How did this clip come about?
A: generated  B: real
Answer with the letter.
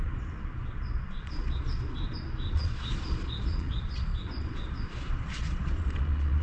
A